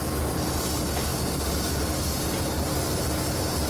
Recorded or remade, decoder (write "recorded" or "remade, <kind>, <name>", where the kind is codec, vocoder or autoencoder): recorded